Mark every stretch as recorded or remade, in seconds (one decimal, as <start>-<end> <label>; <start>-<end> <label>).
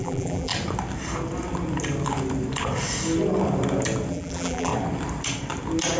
0.0-0.5 remade; 0.5-4.1 recorded; 4.1-4.7 remade; 4.7-6.0 recorded